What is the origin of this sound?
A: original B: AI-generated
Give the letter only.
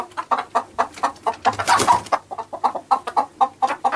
A